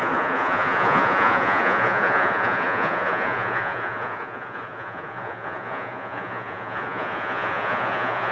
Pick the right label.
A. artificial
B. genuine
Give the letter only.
A